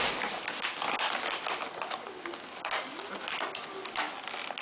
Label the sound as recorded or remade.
recorded